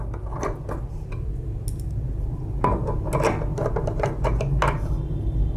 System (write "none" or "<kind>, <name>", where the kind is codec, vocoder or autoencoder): none